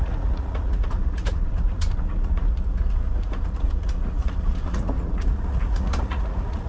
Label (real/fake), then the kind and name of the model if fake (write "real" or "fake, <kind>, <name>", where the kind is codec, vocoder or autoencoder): fake, vocoder, Vocos